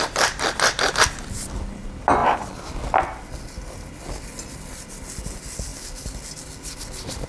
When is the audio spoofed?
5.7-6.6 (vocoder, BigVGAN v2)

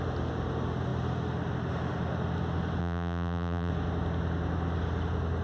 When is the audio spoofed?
2.8-3.7 (vocoder, BigVGAN v2)

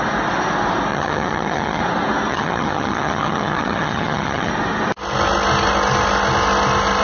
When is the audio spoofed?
0.9-1.8 (vocoder, HiFi-GAN); 2.3-4.5

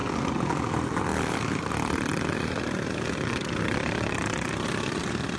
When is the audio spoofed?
0.5-5.4 (vocoder, BigVGAN v2)

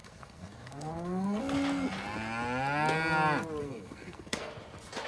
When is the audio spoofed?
0.0-1.4 (codec, SNAC); 3.6-4.5